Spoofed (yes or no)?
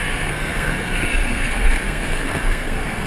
yes